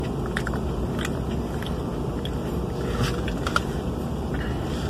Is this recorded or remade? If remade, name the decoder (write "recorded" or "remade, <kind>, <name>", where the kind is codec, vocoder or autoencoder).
recorded